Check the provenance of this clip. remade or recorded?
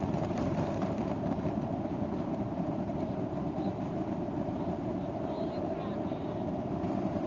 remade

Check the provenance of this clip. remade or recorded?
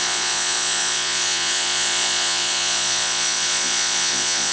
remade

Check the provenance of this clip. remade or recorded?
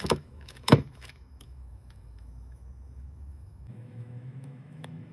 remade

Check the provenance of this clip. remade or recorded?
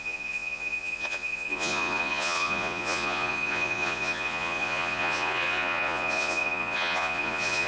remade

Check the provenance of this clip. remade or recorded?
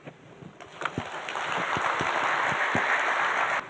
recorded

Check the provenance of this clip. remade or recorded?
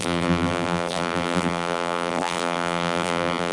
remade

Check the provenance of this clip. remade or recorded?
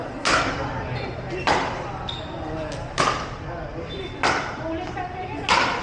recorded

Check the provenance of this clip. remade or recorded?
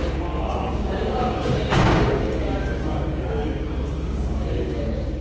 remade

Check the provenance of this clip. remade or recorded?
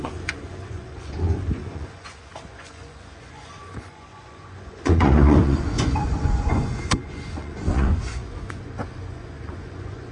remade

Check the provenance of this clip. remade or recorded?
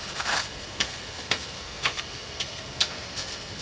remade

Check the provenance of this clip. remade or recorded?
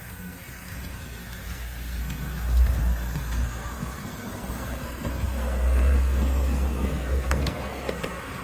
remade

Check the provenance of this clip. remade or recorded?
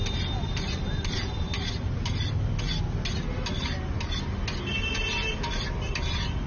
recorded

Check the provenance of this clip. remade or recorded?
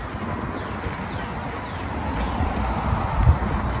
recorded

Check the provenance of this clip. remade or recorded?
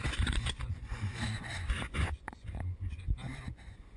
remade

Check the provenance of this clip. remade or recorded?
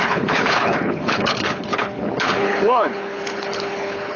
remade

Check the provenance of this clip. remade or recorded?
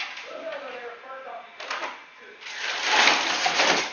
recorded